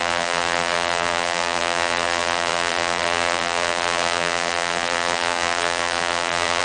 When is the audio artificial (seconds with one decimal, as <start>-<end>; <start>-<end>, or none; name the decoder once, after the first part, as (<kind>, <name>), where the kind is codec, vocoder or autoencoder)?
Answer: 0.0-6.6 (vocoder, BigVGAN v2)